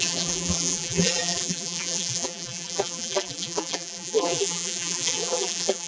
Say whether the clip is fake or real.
fake